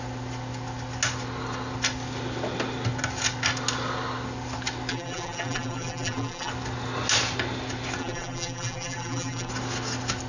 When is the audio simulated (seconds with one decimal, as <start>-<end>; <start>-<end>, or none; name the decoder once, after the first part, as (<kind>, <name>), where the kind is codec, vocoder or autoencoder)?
4.9-6.5 (vocoder, BigVGAN v2); 8.0-9.5